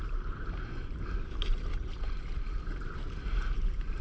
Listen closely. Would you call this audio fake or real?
fake